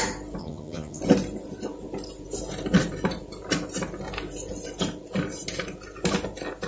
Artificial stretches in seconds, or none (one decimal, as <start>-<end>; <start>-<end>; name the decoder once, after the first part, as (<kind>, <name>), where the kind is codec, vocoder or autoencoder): 0.4-1.0 (vocoder, HiFi-GAN)